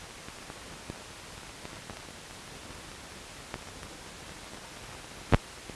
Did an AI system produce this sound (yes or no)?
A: no